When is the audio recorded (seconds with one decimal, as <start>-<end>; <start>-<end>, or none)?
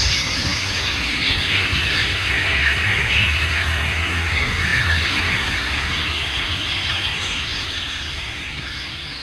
none